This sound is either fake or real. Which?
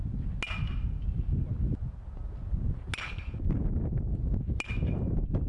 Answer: real